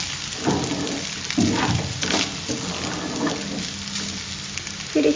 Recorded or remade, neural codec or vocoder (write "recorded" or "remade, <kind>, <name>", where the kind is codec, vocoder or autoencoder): recorded